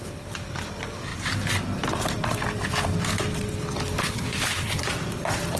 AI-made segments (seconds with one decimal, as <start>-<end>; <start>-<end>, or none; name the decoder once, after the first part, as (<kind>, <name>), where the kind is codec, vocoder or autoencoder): 4.0-4.8 (codec, HILCodec)